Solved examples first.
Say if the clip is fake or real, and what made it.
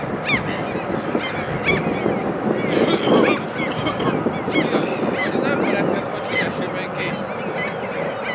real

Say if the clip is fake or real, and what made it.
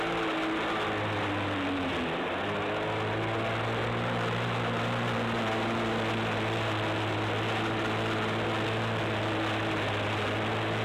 real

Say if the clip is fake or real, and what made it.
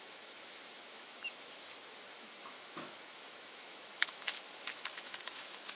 fake, autoencoder, DAC-VAE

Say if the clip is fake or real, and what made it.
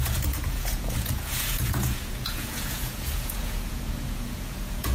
fake, vocoder, Vocos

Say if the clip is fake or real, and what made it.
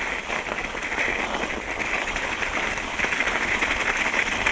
real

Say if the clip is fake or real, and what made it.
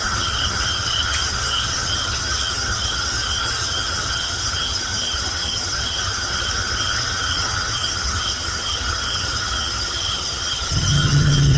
fake, vocoder, HiFi-GAN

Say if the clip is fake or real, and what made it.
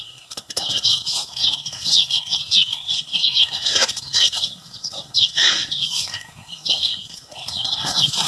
fake, codec, SNAC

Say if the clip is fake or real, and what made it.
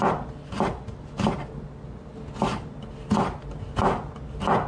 real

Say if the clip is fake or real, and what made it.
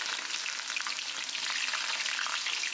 real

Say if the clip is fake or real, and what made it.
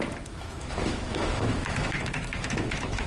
fake, autoencoder, DAC-VAE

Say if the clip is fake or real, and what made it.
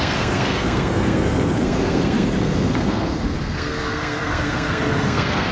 fake, codec, SNAC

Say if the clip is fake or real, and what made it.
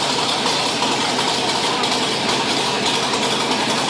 real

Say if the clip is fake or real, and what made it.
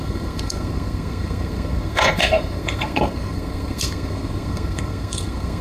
fake, codec, SNAC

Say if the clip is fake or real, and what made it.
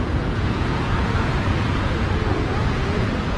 fake, vocoder, Vocos